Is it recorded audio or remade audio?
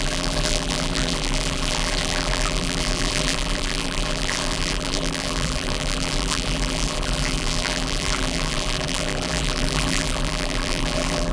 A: remade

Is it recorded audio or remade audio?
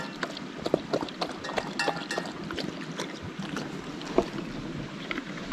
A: recorded